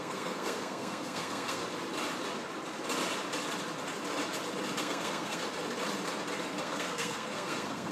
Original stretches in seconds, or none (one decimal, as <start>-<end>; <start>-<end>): 1.6-4.8; 5.4-6.6